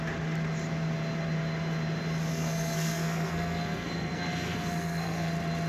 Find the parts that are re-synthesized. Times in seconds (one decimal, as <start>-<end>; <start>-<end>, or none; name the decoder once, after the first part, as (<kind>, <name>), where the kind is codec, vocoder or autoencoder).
2.3-5.3 (codec, SNAC)